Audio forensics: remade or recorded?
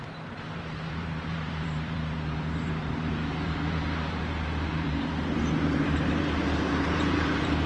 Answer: remade